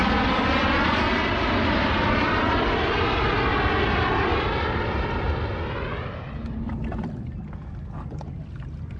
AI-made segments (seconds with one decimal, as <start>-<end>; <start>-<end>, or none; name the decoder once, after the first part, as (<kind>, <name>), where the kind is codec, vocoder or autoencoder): none

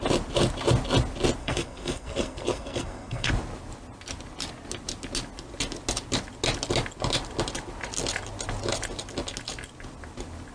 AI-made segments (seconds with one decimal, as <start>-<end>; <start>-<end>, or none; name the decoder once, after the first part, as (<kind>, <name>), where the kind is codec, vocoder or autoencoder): 1.4-3.3 (codec, SNAC)

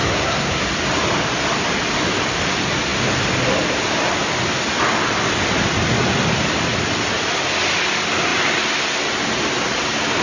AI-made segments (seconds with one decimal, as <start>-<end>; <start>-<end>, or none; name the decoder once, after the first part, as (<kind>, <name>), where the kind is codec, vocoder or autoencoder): 0.0-0.6 (codec, SNAC)

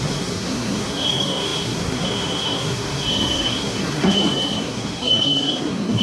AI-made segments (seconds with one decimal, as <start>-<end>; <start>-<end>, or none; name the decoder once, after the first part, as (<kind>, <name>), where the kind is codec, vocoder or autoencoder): 0.0-6.0 (codec, SNAC)

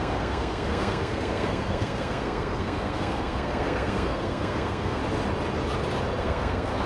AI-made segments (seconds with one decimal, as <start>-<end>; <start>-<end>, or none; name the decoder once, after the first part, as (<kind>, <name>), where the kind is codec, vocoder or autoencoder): 0.0-5.0 (codec, SNAC); 6.2-6.9